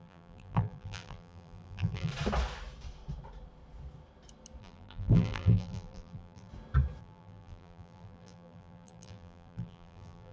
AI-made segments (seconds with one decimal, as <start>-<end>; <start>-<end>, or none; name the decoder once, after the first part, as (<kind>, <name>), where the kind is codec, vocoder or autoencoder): 0.0-2.1 (vocoder, BigVGAN v2); 4.6-6.5; 7.0-10.3